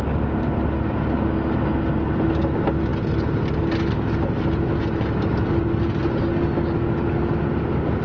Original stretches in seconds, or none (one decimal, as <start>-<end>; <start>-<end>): 0.0-8.0